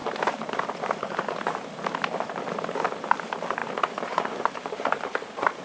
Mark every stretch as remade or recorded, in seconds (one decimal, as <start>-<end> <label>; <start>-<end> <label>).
0.0-3.6 recorded; 3.6-5.6 remade